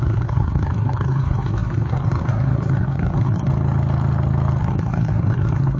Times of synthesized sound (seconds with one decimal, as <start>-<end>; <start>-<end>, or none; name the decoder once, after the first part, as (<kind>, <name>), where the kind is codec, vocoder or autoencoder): 0.0-3.5 (codec, SNAC); 4.6-5.8